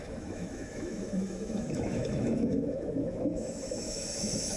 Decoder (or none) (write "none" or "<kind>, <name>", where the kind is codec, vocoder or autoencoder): autoencoder, DAC-VAE